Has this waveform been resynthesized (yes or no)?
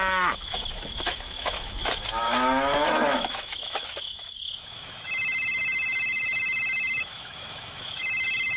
yes